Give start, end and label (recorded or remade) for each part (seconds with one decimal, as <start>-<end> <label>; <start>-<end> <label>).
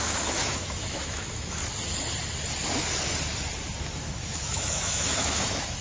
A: 0.0-1.6 remade; 1.6-3.8 recorded; 3.8-5.8 remade